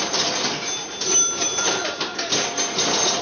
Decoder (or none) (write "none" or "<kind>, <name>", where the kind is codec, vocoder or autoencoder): none